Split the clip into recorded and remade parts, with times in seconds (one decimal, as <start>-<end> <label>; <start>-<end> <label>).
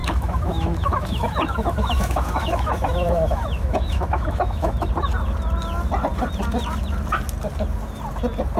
0.0-4.9 remade; 4.9-8.6 recorded